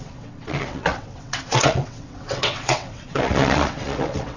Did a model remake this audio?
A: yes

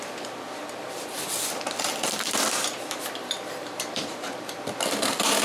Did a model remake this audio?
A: yes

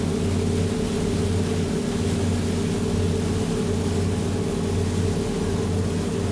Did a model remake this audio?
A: no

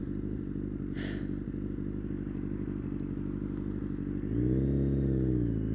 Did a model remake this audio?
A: no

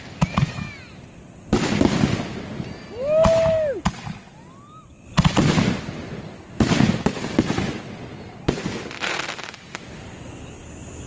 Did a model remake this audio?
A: no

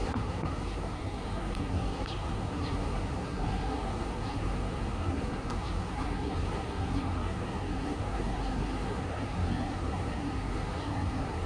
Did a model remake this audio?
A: yes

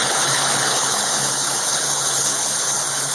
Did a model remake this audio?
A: yes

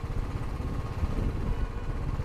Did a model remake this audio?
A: no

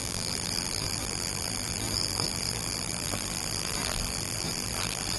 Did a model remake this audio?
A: yes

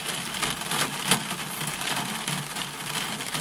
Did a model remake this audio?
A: no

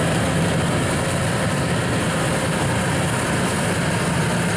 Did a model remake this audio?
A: no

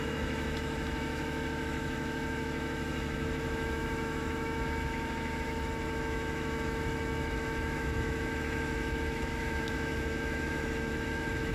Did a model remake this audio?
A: yes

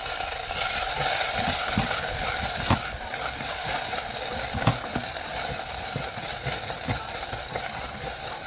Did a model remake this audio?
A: no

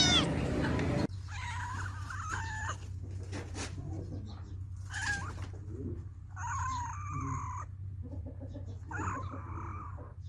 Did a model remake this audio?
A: no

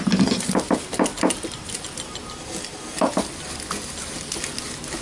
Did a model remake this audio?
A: no